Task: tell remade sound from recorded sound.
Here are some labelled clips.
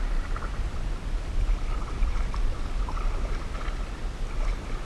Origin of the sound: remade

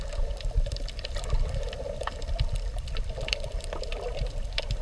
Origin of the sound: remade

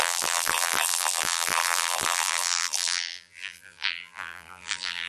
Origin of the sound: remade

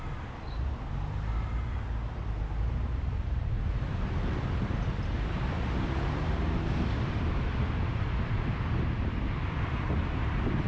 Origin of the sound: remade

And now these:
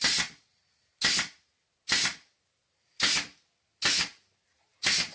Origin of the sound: recorded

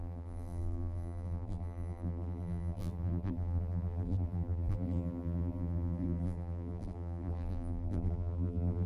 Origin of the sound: remade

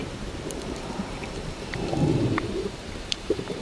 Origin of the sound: remade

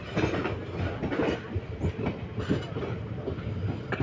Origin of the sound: recorded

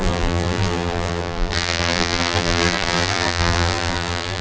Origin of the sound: remade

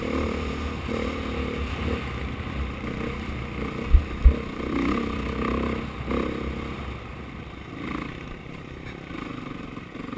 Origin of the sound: recorded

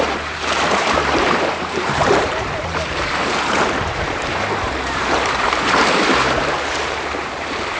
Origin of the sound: remade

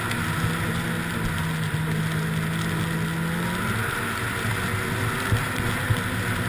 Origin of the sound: recorded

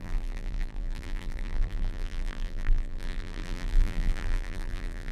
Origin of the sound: remade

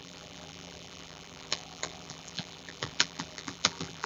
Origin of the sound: remade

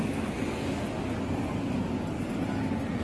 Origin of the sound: recorded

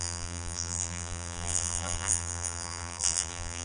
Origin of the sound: remade